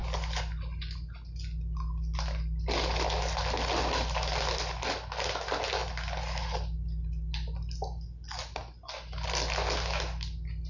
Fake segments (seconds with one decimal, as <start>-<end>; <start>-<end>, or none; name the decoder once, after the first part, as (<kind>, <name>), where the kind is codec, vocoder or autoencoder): none